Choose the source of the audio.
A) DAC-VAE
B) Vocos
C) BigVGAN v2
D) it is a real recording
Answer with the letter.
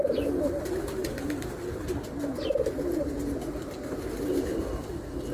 D